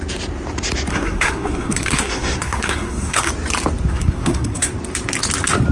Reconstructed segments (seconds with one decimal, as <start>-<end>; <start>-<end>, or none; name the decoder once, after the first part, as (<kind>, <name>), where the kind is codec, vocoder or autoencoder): 0.9-3.3 (codec, SNAC); 3.9-4.7